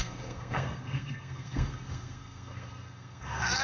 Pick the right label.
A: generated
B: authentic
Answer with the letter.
A